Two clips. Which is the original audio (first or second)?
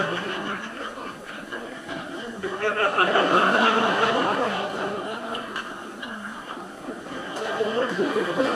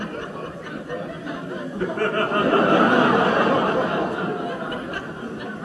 second